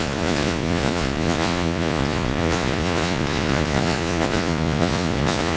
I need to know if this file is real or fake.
fake